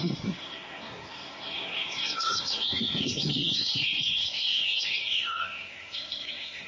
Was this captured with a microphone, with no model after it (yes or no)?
no